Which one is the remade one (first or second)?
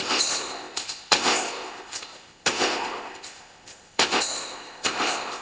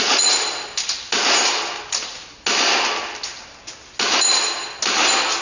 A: first